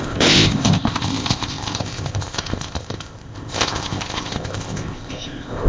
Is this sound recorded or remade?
remade